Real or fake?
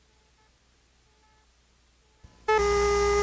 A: real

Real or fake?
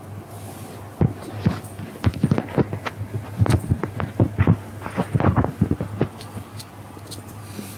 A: real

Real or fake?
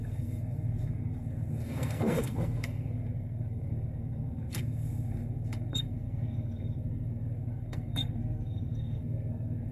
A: fake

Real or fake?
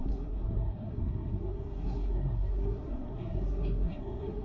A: fake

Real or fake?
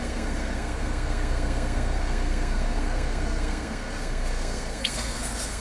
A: fake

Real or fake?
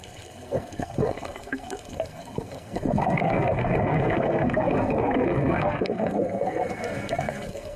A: fake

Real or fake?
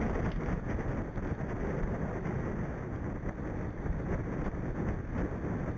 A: real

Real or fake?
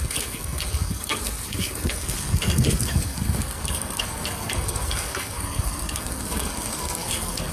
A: fake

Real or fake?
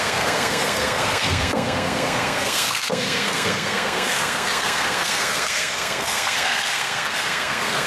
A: fake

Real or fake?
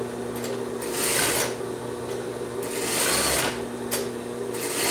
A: real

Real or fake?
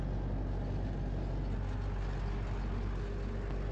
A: real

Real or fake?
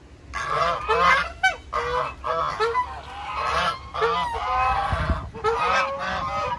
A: real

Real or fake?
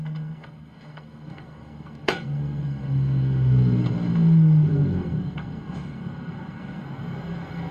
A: fake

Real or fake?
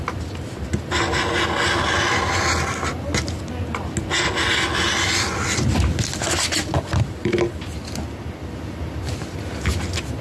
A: real